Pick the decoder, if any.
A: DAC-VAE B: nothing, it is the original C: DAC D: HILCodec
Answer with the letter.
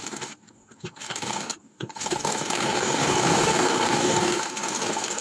C